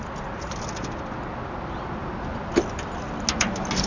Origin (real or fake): real